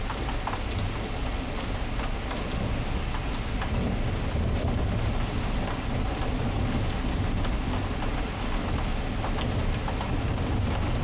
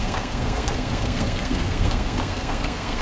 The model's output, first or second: second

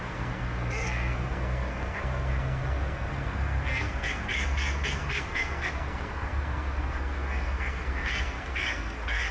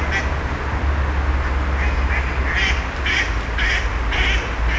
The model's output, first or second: first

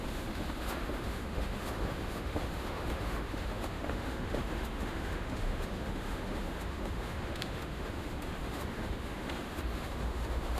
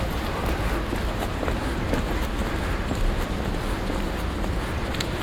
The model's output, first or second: first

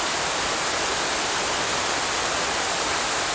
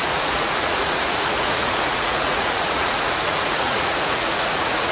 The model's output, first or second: second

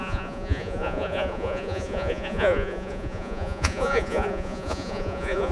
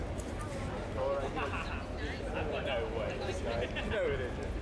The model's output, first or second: first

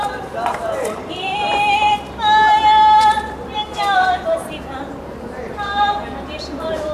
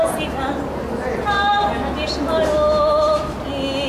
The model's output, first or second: first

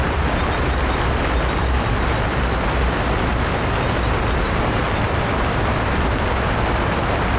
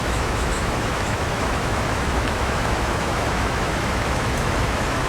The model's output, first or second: second